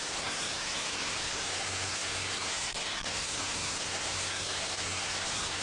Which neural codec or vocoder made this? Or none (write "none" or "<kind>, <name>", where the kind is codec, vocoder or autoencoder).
codec, SNAC